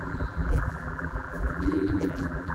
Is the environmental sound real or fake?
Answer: fake